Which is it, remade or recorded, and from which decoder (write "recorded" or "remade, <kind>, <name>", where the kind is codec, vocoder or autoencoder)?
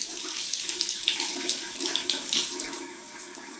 remade, codec, DAC